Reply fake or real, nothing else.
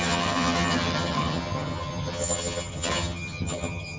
fake